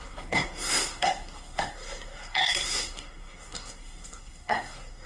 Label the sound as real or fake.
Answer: fake